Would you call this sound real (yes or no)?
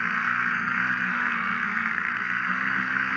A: no